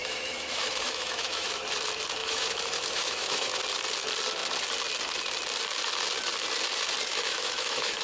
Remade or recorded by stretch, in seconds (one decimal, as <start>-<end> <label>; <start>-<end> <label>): 0.0-1.6 remade; 1.6-2.2 recorded; 2.2-3.6 remade; 3.6-7.1 recorded; 7.1-8.0 remade